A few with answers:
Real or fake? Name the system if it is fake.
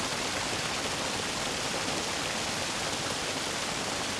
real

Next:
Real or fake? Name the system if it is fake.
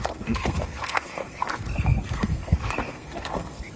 fake, codec, SNAC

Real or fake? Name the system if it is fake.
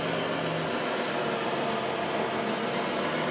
real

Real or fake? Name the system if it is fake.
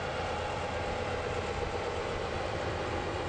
real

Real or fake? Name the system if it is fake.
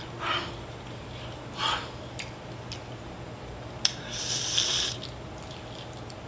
real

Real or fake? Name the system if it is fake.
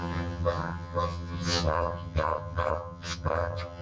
fake, vocoder, HiFi-GAN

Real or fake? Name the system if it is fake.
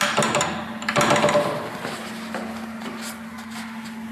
real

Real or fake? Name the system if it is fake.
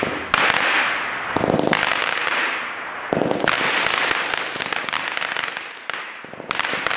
real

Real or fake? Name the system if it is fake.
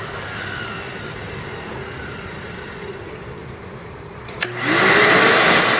real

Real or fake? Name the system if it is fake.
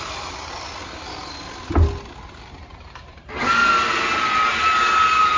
real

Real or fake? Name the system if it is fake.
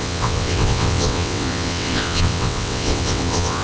fake, vocoder, WaveNeXt